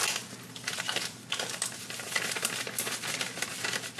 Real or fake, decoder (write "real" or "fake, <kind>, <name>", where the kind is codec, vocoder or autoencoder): real